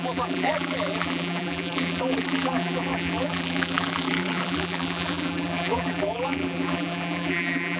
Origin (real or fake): fake